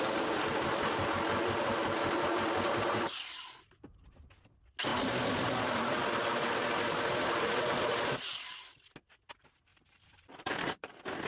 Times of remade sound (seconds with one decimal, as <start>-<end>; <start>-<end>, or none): 9.7-11.3